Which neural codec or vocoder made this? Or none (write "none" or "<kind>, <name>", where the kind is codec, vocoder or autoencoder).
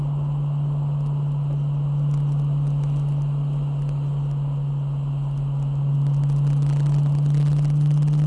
none